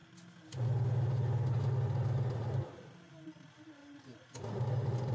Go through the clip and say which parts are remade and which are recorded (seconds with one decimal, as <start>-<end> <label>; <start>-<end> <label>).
0.0-5.1 recorded

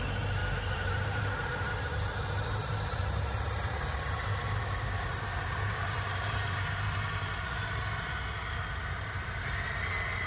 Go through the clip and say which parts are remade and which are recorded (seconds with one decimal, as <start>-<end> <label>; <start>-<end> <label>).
0.0-0.4 recorded; 0.4-1.7 remade; 1.7-2.6 recorded; 2.6-6.9 remade; 6.9-10.3 recorded

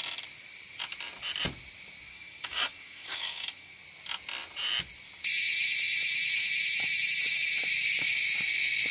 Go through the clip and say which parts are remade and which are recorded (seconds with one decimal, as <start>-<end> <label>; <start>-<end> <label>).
0.0-2.1 recorded; 2.1-3.8 remade; 3.8-8.9 recorded